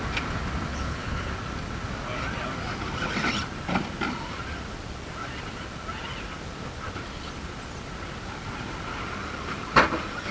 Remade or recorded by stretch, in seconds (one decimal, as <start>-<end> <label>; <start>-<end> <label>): 0.0-0.7 recorded; 0.7-1.3 remade; 1.3-10.3 recorded